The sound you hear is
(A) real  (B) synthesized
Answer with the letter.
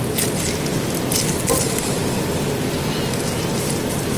A